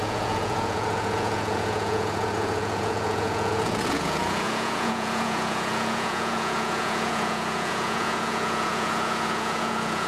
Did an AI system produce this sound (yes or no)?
yes